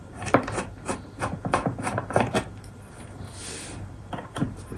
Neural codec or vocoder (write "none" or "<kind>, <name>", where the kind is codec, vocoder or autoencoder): vocoder, BigVGAN v2